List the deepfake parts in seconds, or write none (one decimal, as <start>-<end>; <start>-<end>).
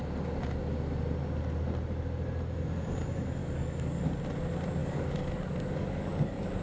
3.4-4.0; 4.8-6.6